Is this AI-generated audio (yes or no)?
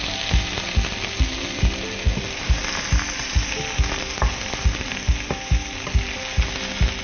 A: no